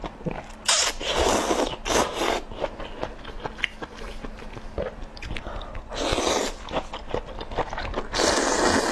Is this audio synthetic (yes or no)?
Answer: no